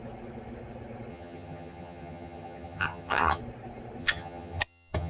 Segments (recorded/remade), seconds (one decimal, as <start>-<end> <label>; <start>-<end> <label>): 0.0-1.1 recorded; 1.1-3.4 remade; 3.4-4.0 recorded; 4.0-5.1 remade